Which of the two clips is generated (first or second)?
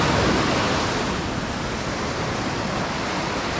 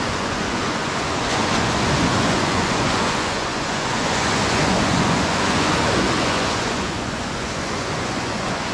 second